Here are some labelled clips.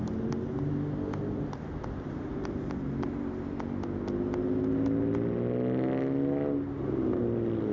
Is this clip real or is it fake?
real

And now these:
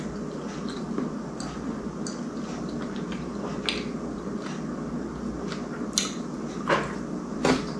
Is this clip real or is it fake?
real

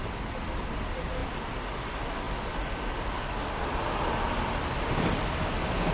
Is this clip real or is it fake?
real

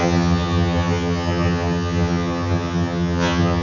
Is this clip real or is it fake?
fake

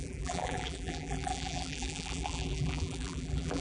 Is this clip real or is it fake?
fake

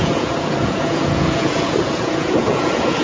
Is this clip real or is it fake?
fake